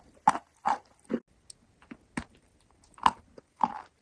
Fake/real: real